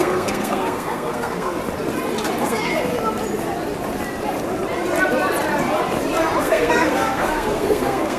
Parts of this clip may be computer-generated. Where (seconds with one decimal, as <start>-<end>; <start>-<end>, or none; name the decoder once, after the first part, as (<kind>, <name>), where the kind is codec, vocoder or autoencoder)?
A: 0.0-1.6 (codec, SNAC); 2.4-2.9; 6.4-8.2